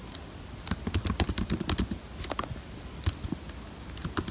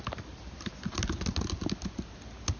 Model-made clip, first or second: first